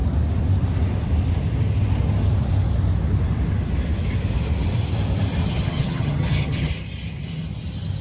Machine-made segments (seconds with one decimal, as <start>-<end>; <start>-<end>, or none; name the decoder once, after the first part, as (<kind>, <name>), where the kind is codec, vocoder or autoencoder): 5.4-6.7 (vocoder, HiFi-GAN)